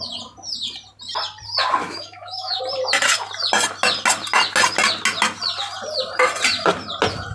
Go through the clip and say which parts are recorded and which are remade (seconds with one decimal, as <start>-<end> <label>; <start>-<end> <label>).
0.0-1.8 recorded; 1.8-2.6 remade; 2.6-7.3 recorded